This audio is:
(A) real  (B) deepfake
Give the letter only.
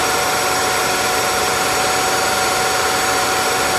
B